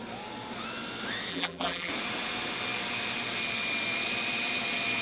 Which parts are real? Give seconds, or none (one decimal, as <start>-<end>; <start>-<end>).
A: 0.0-1.3; 1.9-5.0